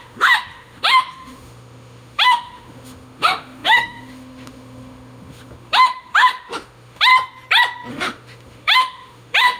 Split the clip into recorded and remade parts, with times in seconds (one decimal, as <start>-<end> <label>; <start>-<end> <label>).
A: 0.0-7.1 remade; 7.1-7.9 recorded; 7.9-9.6 remade